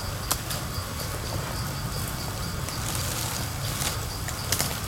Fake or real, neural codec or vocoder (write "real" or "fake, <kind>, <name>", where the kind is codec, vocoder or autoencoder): real